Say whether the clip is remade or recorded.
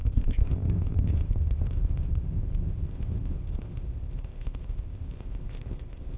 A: remade